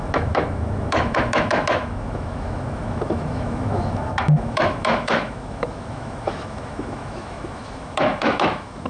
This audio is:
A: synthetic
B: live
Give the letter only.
A